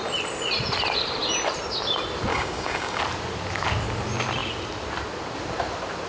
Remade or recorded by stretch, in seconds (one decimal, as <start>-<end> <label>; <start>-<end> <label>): 0.0-2.3 recorded; 2.3-3.0 remade; 3.0-6.1 recorded

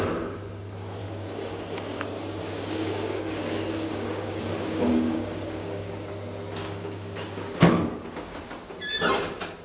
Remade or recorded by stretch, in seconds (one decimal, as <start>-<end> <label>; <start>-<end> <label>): 0.0-1.0 recorded; 1.0-6.1 remade; 6.1-6.6 recorded; 6.6-8.4 remade; 8.4-9.6 recorded

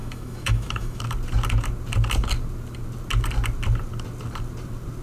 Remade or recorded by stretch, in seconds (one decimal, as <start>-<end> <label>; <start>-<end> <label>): 0.0-1.0 remade; 1.0-5.0 recorded

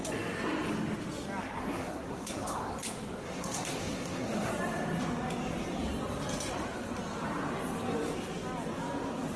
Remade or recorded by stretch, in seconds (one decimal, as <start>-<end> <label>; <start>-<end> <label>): 0.0-1.6 recorded; 1.6-2.7 remade; 2.7-3.2 recorded; 3.2-4.5 remade; 4.5-9.4 recorded